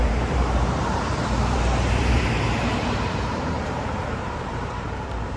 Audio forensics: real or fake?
fake